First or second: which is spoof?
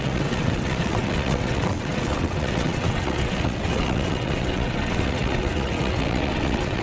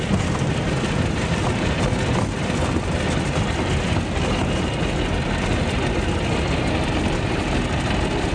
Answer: first